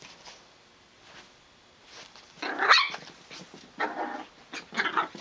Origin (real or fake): real